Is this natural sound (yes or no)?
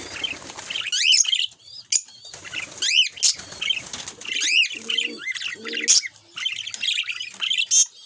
yes